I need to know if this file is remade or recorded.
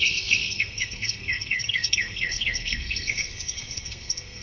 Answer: remade